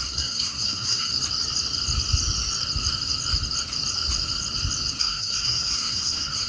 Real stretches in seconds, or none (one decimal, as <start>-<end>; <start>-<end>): 1.1-5.0